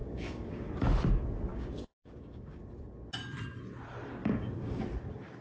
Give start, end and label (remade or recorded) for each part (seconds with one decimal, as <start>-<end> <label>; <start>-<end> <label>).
0.0-0.7 remade; 0.7-1.5 recorded; 1.5-2.6 remade; 2.6-4.2 recorded; 4.2-4.8 remade; 4.8-5.4 recorded